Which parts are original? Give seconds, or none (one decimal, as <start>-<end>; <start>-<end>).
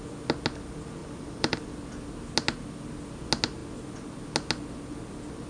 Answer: 0.0-1.0; 1.7-5.5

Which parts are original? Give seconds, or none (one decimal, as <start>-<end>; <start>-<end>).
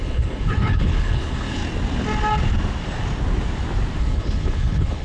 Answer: 1.6-4.0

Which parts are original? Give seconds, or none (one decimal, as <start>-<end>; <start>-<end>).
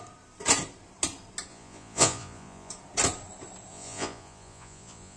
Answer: 0.0-1.5; 2.7-3.7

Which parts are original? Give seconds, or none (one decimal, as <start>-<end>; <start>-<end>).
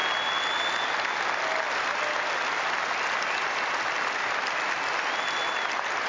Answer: 0.0-6.1